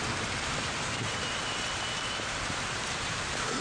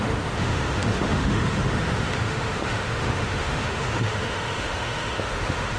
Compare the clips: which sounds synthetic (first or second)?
second